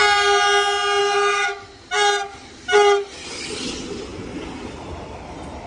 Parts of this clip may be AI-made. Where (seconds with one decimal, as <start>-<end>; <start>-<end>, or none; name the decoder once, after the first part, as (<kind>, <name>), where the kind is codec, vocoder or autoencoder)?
1.0-1.8 (autoencoder, DAC-VAE)